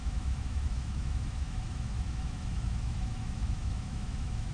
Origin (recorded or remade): remade